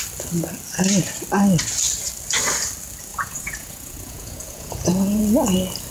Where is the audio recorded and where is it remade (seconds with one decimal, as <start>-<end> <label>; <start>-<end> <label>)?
0.0-3.1 recorded; 3.1-5.2 remade; 5.2-5.9 recorded